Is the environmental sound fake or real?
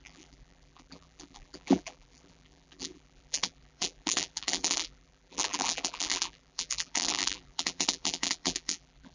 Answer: fake